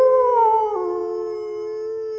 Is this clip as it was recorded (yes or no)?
yes